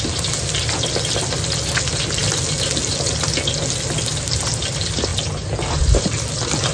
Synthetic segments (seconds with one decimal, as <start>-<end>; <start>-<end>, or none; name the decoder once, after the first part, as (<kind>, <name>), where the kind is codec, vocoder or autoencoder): none